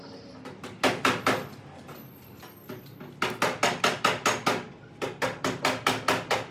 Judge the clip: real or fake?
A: real